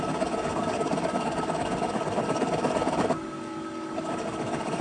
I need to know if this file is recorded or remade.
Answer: remade